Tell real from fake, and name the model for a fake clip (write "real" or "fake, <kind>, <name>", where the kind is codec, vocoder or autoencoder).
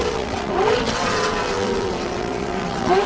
fake, vocoder, WaveNeXt